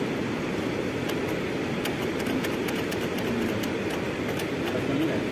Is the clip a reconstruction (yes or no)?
no